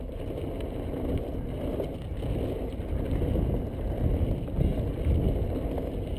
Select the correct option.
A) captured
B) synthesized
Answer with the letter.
A